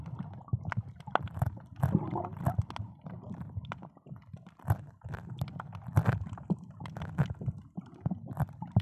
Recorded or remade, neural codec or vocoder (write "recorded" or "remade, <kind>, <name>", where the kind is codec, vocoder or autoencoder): recorded